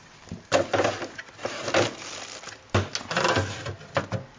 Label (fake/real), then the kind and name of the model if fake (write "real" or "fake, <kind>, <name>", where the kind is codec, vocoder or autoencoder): real